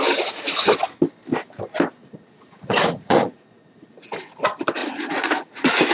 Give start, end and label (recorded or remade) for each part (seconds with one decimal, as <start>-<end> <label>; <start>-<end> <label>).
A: 0.0-2.0 recorded; 2.0-4.3 remade; 4.3-4.8 recorded; 4.8-5.9 remade